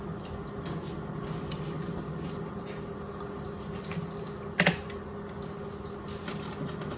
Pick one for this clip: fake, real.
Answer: real